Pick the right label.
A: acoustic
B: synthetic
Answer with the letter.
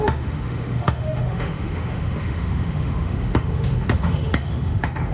B